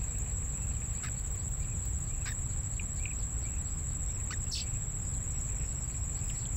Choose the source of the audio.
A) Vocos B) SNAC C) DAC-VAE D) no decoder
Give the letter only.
D